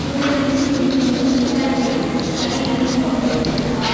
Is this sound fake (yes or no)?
no